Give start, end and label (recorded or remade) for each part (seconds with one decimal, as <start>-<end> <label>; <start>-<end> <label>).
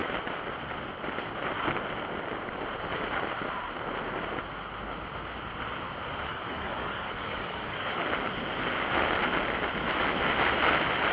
0.0-6.3 recorded; 6.3-8.1 remade; 8.1-11.1 recorded